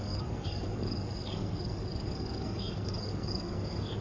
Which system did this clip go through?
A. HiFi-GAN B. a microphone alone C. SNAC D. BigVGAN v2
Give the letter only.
C